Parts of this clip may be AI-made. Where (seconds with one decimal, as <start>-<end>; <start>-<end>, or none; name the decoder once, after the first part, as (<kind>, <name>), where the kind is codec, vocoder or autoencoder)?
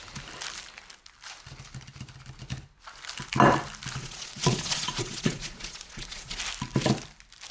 4.0-6.4 (vocoder, Vocos)